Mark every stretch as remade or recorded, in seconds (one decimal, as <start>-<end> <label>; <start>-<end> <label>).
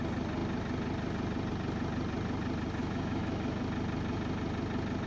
0.0-2.8 recorded; 2.8-3.6 remade; 3.6-5.1 recorded